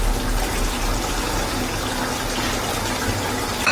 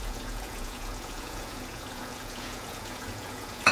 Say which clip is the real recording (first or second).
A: first